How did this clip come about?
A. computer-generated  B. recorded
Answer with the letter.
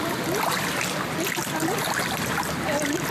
B